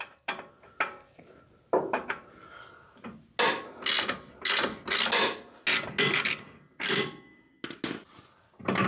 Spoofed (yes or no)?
no